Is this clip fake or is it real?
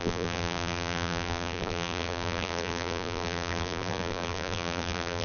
fake